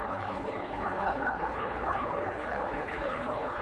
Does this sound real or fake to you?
fake